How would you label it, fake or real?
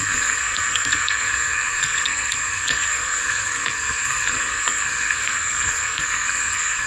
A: fake